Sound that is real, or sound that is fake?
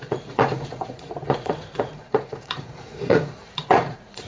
fake